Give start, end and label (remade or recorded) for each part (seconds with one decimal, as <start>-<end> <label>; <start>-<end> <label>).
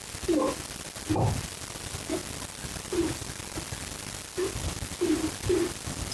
0.0-6.1 recorded